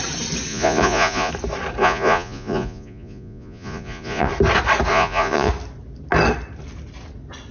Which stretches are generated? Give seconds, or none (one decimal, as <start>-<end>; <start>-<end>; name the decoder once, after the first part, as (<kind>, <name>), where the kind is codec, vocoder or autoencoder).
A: 0.5-1.3 (vocoder, Vocos); 1.8-4.3; 4.9-5.5